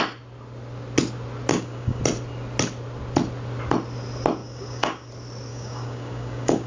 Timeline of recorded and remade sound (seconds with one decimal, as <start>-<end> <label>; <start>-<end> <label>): 0.0-1.5 recorded; 1.5-2.0 remade; 2.0-4.4 recorded; 4.4-5.1 remade; 5.1-5.5 recorded; 5.5-6.7 remade